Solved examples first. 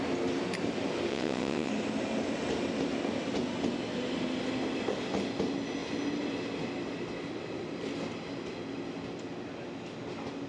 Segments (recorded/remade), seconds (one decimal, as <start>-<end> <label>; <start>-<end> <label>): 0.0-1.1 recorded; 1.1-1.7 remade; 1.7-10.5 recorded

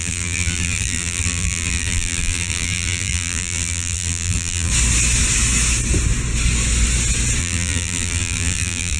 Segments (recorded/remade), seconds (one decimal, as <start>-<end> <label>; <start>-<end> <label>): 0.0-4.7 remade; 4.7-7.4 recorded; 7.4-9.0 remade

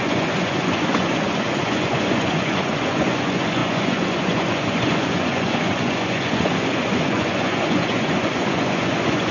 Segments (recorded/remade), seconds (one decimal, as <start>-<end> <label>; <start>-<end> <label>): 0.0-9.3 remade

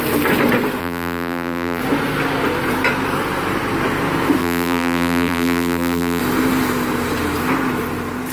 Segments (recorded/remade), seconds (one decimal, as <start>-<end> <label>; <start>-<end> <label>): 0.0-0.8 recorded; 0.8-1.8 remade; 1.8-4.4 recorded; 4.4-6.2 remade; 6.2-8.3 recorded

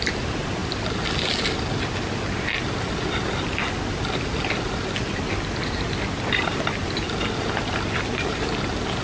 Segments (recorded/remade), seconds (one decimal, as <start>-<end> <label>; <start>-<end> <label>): 0.0-9.0 recorded